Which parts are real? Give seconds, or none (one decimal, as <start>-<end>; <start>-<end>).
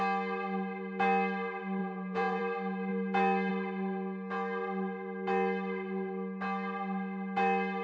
0.0-1.8; 2.4-7.8